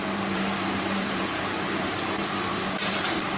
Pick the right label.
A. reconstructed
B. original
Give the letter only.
A